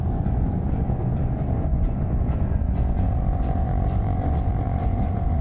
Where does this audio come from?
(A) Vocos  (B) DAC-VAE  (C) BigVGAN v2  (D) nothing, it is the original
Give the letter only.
A